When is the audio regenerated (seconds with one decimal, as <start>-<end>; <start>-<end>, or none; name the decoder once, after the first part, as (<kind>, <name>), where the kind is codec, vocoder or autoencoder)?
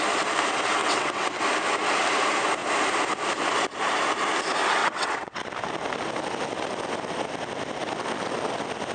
0.8-1.4 (vocoder, WaveNeXt); 4.8-5.4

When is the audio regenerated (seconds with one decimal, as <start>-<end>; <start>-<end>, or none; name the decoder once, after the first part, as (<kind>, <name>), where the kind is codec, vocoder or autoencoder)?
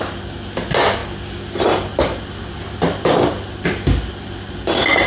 none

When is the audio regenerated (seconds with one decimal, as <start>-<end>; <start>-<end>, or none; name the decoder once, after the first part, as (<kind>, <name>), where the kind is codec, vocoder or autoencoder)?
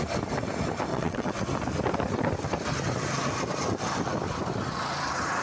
0.9-1.4 (vocoder, WaveNeXt)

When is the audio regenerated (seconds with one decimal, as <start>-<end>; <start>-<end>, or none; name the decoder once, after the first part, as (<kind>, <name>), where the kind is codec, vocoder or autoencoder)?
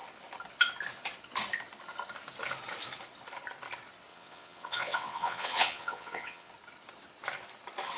4.1-6.5 (vocoder, WaveNeXt)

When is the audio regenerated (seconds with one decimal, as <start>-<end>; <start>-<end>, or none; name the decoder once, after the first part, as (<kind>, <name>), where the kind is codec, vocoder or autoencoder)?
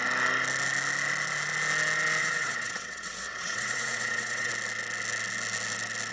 2.2-4.5 (vocoder, WaveNeXt)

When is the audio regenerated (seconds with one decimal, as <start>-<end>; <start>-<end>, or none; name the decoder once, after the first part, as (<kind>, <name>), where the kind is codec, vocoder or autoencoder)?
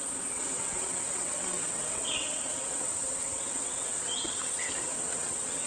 0.0-5.7 (vocoder, WaveNeXt)